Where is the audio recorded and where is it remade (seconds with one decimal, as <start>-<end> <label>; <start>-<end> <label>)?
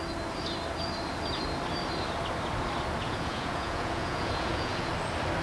0.0-3.0 recorded; 3.0-4.9 remade; 4.9-5.4 recorded